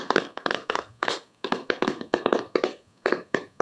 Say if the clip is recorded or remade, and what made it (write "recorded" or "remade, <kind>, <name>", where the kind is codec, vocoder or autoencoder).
remade, codec, SNAC